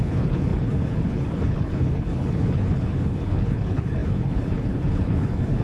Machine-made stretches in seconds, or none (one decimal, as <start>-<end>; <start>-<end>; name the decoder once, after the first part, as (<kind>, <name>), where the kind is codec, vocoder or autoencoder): 0.0-5.6 (codec, HILCodec)